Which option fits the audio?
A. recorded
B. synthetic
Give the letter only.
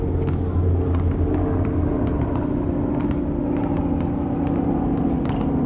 A